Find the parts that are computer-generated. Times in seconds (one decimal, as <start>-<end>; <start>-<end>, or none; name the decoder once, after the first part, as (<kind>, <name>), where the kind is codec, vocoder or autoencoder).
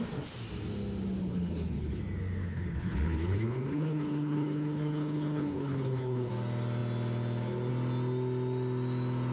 1.2-2.0 (codec, HILCodec); 2.4-6.3